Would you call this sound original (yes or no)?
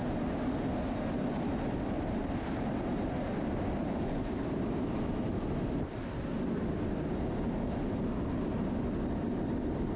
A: yes